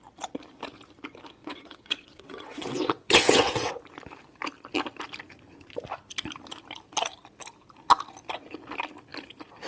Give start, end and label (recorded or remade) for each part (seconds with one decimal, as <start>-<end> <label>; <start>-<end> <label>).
0.0-1.4 recorded; 1.4-3.7 remade; 3.7-9.7 recorded